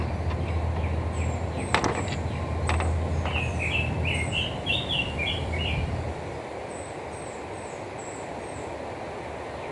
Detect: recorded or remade recorded